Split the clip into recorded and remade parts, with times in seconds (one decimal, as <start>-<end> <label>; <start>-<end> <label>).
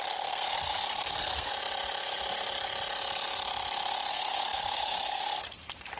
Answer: 0.0-1.5 remade; 1.5-4.1 recorded; 4.1-6.0 remade